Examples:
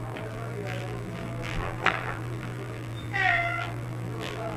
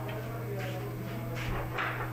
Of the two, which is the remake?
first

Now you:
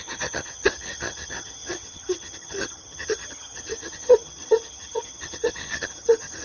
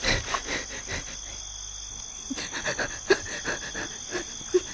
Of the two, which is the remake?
first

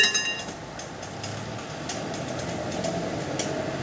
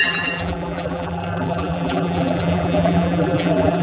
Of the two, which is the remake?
second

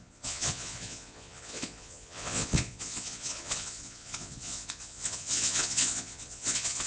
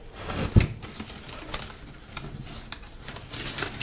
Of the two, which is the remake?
first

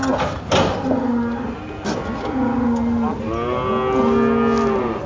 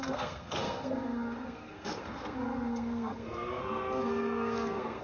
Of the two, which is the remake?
second